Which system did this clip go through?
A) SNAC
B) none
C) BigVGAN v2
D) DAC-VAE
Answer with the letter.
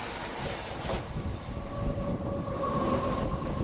B